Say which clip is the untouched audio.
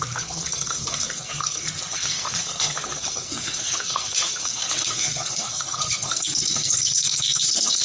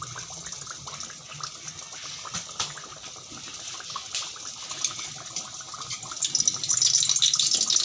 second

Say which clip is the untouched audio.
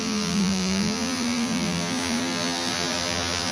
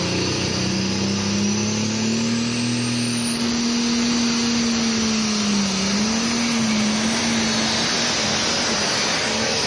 second